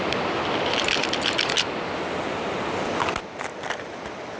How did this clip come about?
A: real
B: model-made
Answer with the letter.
A